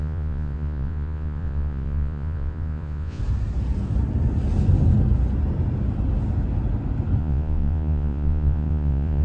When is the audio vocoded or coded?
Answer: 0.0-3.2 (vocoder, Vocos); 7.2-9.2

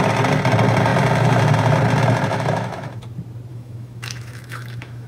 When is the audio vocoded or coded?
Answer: 2.3-3.0 (autoencoder, DAC-VAE); 3.5-5.1

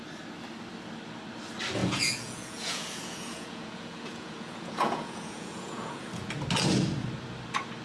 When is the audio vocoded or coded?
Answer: 1.8-6.3 (vocoder, Vocos)

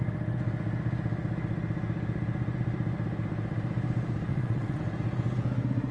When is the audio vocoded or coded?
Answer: 4.3-4.8 (vocoder, WaveNeXt)

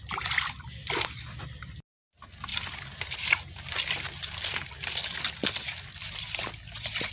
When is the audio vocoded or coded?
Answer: none

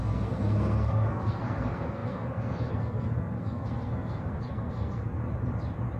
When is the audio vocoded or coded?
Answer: 0.0-5.2 (codec, SNAC)

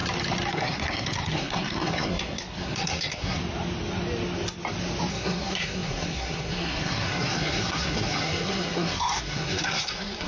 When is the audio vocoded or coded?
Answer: 0.5-3.4 (codec, SNAC); 5.1-10.3

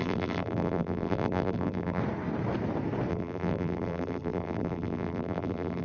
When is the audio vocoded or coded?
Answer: 0.0-2.0 (vocoder, BigVGAN v2); 3.1-5.8